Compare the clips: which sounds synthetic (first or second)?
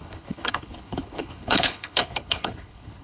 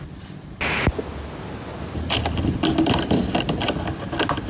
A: first